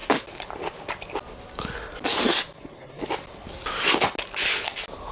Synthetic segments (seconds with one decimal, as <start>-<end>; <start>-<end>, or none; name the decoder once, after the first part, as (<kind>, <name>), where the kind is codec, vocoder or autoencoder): none